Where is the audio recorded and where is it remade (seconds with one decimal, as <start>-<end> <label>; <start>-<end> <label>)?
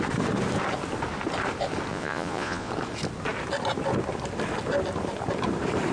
0.0-1.9 recorded; 1.9-2.7 remade; 2.7-5.9 recorded